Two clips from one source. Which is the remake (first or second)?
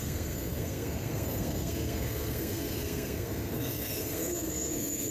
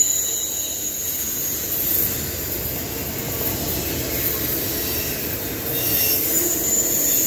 first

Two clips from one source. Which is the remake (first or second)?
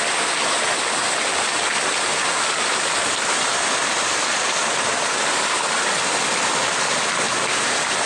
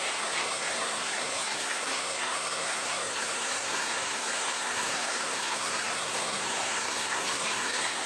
second